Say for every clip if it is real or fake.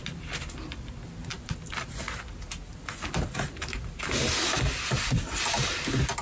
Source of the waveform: real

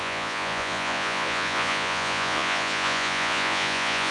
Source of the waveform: fake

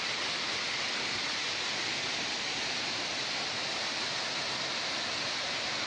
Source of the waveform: real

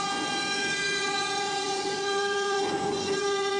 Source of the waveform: fake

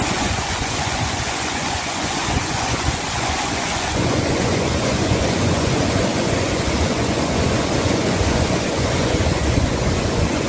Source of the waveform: fake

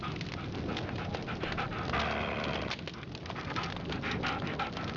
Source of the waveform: real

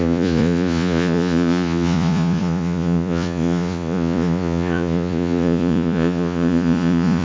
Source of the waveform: fake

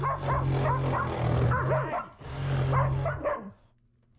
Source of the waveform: real